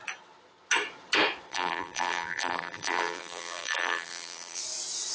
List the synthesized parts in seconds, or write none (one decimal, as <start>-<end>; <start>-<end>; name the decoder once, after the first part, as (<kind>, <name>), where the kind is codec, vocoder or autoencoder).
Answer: 1.5-4.6 (vocoder, BigVGAN v2)